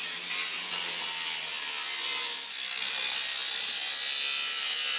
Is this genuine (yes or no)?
yes